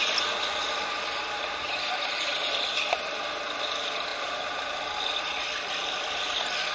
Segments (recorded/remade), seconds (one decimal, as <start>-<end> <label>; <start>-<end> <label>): 0.0-6.7 recorded